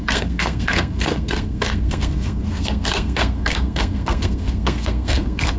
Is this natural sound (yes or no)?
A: no